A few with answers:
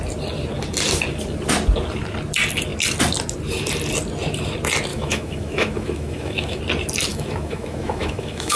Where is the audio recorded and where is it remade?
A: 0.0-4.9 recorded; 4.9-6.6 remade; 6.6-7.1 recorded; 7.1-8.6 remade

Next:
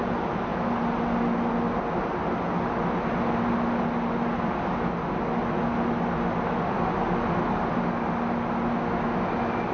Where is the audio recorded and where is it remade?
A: 0.0-9.7 recorded

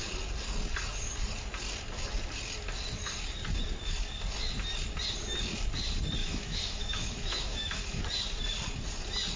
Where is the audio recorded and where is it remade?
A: 0.0-6.2 recorded; 6.2-8.0 remade; 8.0-9.4 recorded

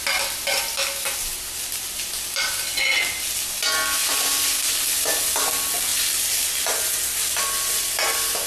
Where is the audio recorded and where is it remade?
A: 0.0-8.5 recorded

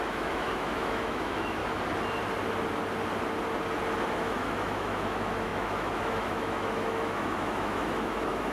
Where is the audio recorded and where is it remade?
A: 0.0-1.6 remade; 1.6-4.1 recorded; 4.1-8.5 remade

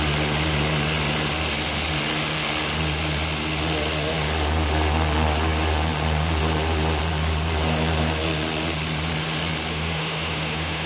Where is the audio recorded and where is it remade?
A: 0.0-9.7 recorded; 9.7-10.9 remade